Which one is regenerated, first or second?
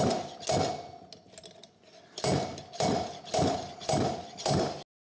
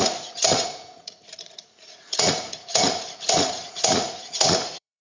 second